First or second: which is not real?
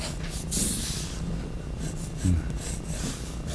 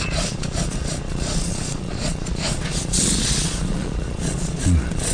second